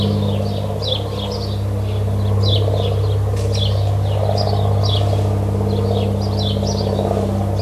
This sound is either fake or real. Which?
real